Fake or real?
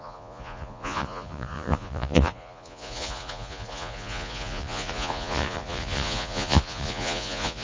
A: fake